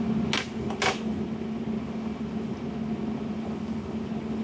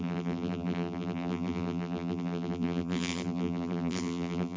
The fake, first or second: second